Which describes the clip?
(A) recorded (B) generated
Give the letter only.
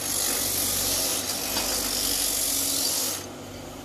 A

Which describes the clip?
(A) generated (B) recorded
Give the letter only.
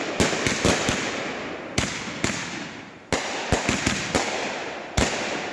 B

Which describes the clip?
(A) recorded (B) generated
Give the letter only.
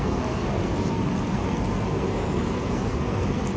B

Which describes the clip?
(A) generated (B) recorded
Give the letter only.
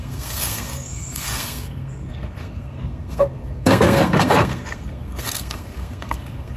A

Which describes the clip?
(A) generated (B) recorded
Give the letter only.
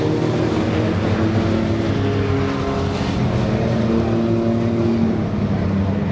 B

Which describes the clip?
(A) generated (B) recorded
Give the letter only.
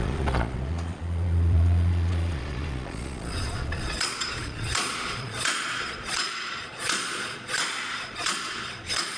A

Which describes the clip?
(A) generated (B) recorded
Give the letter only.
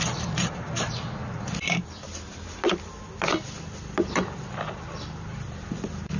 A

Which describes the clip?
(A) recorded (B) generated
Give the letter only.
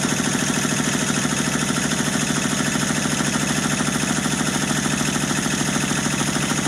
A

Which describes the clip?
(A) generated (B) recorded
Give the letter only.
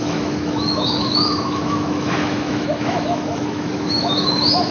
A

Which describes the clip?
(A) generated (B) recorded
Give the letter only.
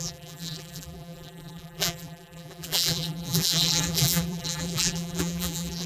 A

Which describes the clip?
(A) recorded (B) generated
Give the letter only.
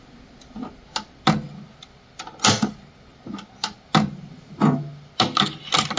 A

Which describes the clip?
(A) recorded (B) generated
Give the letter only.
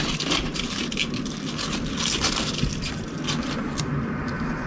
A